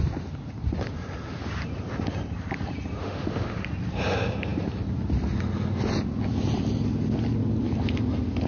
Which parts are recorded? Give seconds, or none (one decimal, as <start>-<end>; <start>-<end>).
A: 0.0-3.0; 3.6-8.5

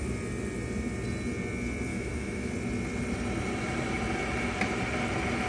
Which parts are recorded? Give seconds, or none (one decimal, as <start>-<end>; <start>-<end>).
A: 0.0-1.9; 2.5-5.5

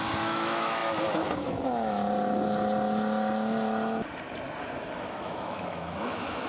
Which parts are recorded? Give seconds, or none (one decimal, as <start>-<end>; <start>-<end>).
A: 2.0-4.9

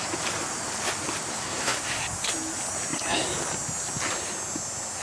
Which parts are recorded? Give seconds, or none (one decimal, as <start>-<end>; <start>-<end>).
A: 0.0-1.3; 2.0-5.0